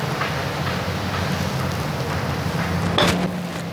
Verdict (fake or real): real